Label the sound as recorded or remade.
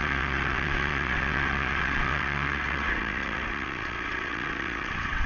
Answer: remade